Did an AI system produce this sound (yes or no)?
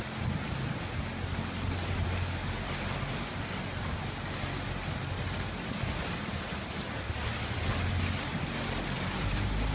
no